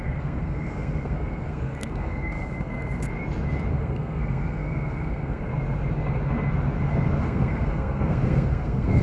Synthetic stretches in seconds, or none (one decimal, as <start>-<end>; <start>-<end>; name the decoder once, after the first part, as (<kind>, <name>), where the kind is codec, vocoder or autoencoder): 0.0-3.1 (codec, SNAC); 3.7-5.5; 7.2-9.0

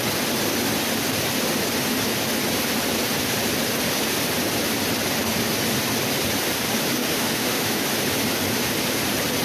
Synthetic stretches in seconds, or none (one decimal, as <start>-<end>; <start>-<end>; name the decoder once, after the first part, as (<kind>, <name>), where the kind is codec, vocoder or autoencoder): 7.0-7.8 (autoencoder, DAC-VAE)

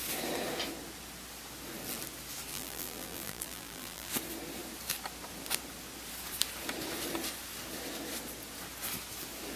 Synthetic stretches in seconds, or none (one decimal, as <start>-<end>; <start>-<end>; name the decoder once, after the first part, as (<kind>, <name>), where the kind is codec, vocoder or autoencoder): 2.5-4.1 (vocoder, BigVGAN v2)

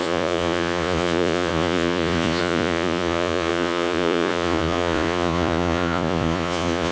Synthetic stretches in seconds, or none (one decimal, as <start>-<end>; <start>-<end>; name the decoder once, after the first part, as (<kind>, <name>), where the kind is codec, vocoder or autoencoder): 0.0-6.9 (vocoder, Vocos)

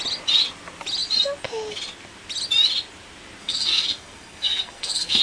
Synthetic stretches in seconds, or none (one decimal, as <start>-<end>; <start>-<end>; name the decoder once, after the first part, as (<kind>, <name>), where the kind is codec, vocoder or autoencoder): 3.4-5.2 (codec, SNAC)